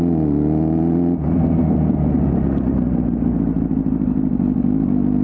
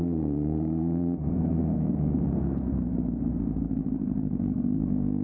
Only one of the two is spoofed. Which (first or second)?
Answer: second